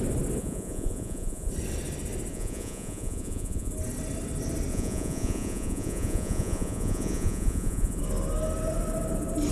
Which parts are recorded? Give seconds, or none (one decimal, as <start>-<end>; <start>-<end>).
0.0-0.4; 1.5-2.3; 3.7-4.7; 8.0-9.5